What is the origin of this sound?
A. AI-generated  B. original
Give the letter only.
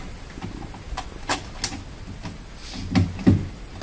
B